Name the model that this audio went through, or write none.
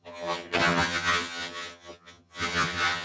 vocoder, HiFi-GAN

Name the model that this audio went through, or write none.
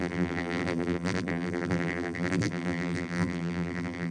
vocoder, BigVGAN v2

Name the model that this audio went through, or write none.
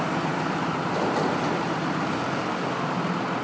none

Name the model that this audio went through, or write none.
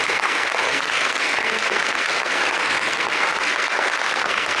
codec, SNAC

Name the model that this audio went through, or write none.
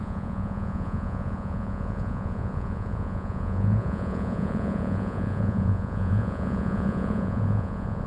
vocoder, Vocos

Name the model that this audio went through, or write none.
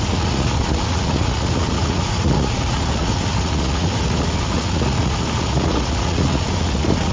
vocoder, Vocos